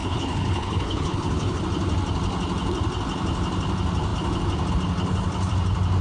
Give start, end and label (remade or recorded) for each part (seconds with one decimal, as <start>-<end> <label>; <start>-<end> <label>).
0.0-1.6 remade; 1.6-6.0 recorded